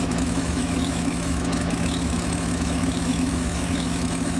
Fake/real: fake